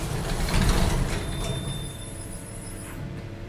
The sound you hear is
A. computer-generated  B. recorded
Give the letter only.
A